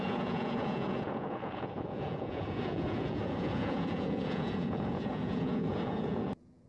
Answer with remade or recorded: remade